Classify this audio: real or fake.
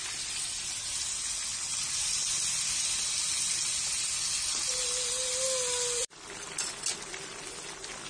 real